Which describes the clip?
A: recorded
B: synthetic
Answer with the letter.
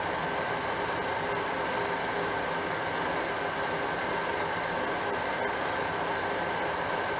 A